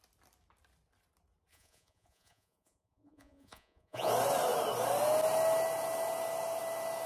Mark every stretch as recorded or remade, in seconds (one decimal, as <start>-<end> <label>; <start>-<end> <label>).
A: 0.0-1.5 recorded; 1.5-4.1 remade; 4.1-7.1 recorded

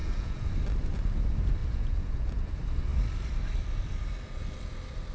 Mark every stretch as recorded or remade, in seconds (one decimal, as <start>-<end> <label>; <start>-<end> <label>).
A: 0.0-0.5 remade; 0.5-1.6 recorded; 1.6-2.5 remade; 2.5-5.1 recorded

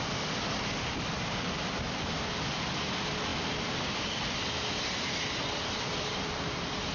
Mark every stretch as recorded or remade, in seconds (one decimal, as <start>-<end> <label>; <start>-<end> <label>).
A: 0.0-6.9 recorded

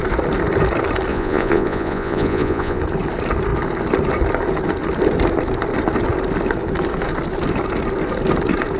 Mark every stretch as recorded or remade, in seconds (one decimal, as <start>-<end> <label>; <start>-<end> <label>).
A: 0.0-1.1 recorded; 1.1-2.8 remade; 2.8-8.8 recorded

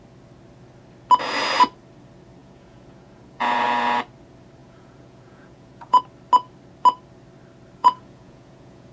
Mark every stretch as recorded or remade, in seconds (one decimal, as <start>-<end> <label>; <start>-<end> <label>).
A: 0.0-2.4 recorded; 2.4-4.0 remade; 4.0-4.6 recorded; 4.6-6.0 remade; 6.0-7.8 recorded; 7.8-8.9 remade

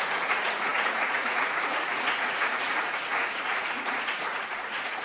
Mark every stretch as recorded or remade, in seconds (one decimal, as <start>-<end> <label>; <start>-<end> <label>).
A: 0.0-5.0 remade

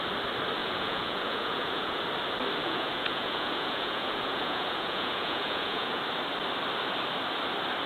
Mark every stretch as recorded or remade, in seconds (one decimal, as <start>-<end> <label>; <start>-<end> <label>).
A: 0.0-0.6 recorded; 0.6-2.0 remade; 2.0-2.6 recorded; 2.6-6.0 remade; 6.0-7.9 recorded